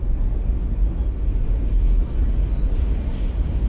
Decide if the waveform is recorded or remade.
recorded